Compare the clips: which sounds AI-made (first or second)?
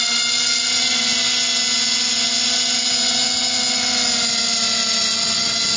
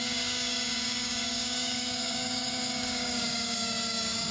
second